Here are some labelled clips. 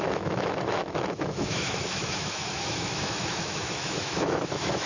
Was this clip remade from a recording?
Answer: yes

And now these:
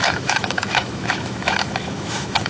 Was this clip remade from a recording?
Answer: yes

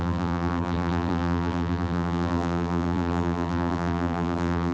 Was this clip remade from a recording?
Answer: yes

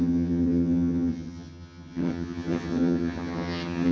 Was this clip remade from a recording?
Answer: yes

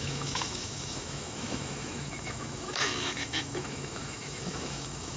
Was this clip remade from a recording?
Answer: yes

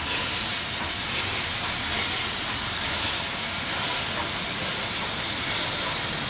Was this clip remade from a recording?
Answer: no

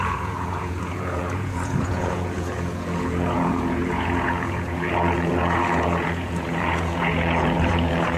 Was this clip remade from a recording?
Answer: yes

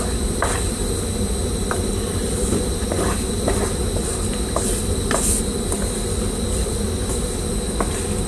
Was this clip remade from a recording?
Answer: no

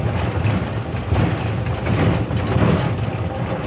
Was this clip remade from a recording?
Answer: no